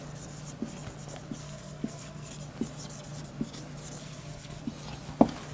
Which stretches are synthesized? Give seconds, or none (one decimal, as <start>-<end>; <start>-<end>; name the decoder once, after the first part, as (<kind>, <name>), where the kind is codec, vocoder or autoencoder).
1.4-2.3 (codec, SNAC); 4.0-4.6